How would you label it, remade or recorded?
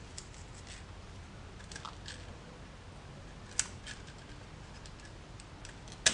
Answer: recorded